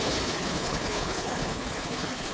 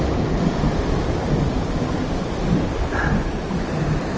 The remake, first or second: first